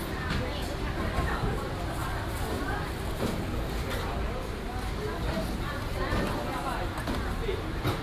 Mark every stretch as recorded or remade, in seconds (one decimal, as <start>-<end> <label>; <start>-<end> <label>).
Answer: 0.0-8.0 recorded